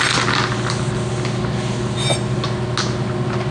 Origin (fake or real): real